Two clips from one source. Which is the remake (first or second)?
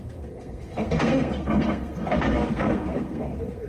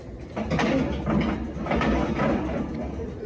first